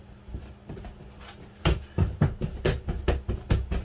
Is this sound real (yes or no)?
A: yes